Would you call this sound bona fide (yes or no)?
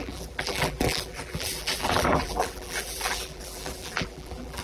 no